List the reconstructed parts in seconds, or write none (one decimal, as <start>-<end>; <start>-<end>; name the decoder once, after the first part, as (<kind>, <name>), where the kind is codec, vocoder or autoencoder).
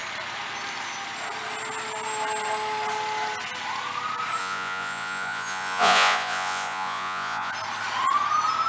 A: 4.4-7.5 (vocoder, Vocos)